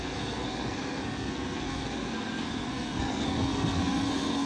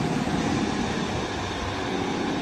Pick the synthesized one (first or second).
first